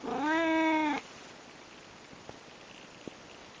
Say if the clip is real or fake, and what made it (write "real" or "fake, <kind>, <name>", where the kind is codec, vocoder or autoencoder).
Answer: real